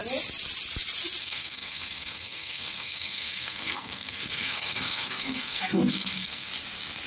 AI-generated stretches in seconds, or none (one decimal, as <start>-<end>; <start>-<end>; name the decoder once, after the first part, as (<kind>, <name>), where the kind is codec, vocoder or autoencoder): 1.2-6.5 (codec, SNAC)